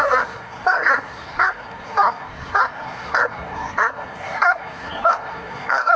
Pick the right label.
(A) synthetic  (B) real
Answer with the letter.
A